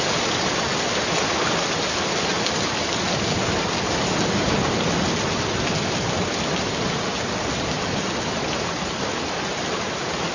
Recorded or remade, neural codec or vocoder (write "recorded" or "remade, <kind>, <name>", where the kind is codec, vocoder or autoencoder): recorded